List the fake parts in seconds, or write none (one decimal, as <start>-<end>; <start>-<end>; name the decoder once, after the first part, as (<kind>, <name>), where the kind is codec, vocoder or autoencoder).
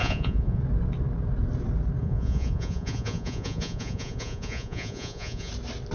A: 0.0-0.6 (vocoder, Vocos); 2.0-5.5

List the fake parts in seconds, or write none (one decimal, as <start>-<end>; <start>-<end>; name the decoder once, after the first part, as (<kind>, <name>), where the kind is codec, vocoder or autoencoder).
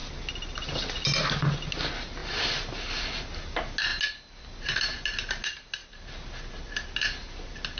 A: none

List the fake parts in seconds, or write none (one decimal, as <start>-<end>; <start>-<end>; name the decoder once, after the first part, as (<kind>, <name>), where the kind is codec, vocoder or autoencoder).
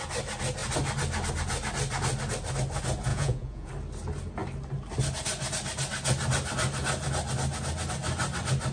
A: 3.1-3.7 (vocoder, Vocos)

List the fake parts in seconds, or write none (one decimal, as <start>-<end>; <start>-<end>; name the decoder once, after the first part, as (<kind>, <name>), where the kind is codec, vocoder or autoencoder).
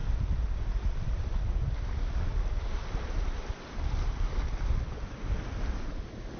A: none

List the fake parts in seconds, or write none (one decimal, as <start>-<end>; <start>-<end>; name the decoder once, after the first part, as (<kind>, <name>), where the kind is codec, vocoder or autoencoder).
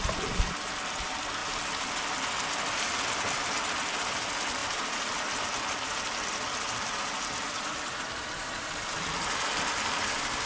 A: none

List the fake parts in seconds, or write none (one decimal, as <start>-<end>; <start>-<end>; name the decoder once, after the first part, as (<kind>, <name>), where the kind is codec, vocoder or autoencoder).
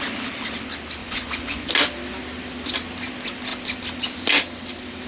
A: 1.0-1.7 (vocoder, Vocos)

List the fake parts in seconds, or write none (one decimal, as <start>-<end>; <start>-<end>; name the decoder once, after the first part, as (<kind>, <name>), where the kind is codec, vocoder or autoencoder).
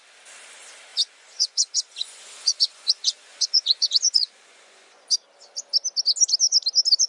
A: 0.9-5.1 (vocoder, Vocos)